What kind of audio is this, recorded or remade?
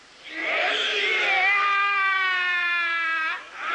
remade